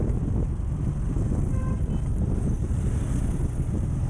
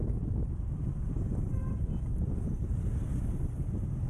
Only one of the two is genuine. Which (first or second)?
first